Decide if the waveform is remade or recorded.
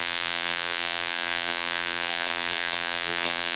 remade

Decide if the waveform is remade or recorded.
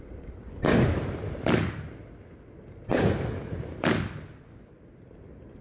recorded